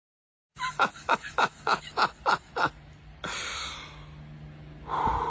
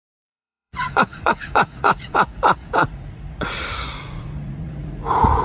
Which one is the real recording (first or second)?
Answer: first